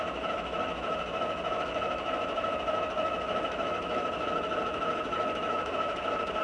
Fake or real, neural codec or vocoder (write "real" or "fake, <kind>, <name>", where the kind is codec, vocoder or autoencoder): fake, autoencoder, DAC-VAE